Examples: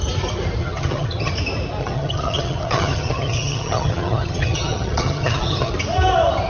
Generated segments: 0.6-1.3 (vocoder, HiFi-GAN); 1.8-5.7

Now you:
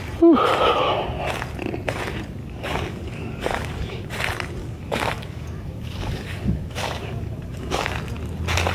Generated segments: 2.4-4.1 (codec, DAC); 4.6-7.9

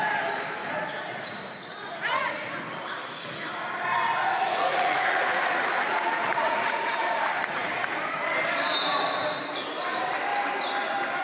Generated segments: 1.1-2.6 (vocoder, Vocos); 4.2-7.7

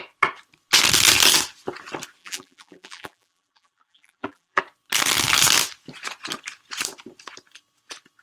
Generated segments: 2.2-4.6 (vocoder, BigVGAN v2)

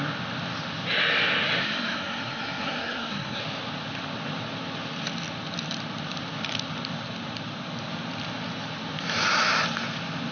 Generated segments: 1.6-3.4 (codec, SNAC)

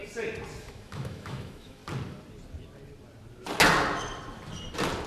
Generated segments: 0.6-1.8 (autoencoder, DAC-VAE)

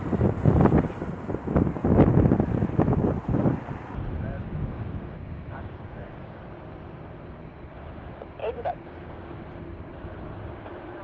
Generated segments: 4.4-6.4 (codec, DAC); 8.4-9.4

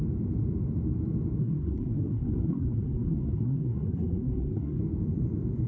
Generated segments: 1.4-4.8 (codec, SNAC)